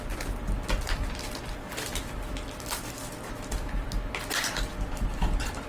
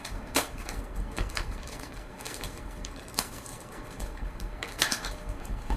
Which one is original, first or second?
first